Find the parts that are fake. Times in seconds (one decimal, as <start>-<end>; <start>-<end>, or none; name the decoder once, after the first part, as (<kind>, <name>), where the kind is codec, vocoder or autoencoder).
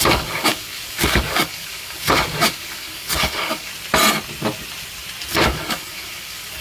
0.0-3.7 (codec, DAC); 5.3-6.6